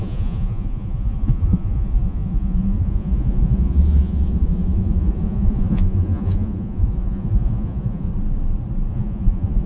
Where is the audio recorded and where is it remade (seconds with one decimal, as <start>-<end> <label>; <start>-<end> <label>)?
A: 0.0-8.1 remade; 8.1-8.9 recorded; 8.9-9.7 remade